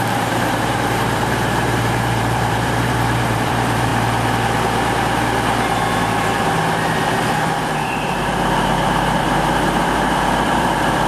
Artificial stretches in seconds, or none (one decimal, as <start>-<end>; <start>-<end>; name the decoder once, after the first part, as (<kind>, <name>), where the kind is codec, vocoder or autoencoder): 0.0-3.9 (vocoder, BigVGAN v2); 7.6-11.1